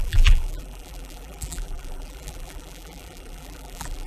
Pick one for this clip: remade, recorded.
remade